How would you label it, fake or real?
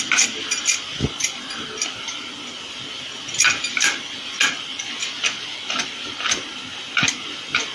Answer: real